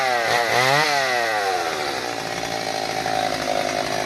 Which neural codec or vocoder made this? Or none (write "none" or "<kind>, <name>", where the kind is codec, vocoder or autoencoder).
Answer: none